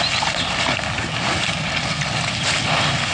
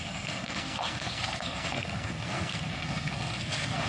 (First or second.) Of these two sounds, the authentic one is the first